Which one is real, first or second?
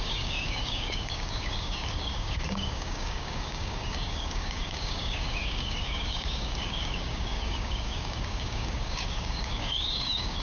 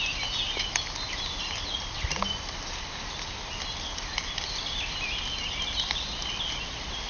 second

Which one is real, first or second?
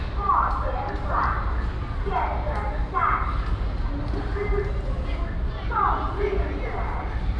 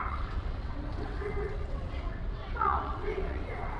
first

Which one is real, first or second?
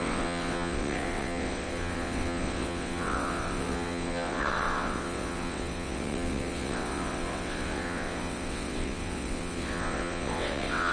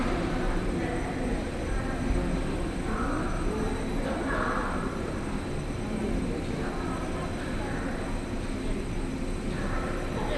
second